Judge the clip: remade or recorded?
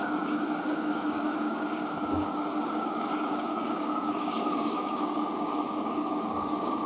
remade